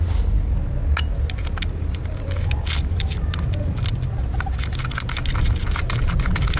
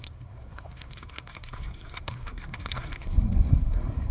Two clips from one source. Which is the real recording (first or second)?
first